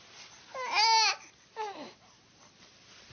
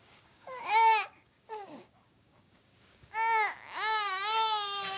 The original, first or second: first